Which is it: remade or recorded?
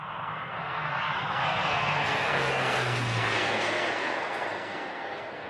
remade